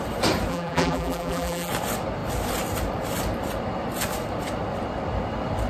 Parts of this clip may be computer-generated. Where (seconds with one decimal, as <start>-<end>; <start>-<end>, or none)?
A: 0.5-1.7